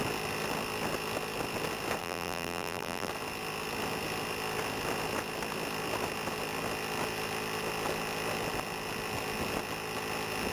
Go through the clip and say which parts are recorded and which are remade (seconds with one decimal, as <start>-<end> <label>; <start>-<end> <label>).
0.0-2.0 recorded; 2.0-3.1 remade; 3.1-10.5 recorded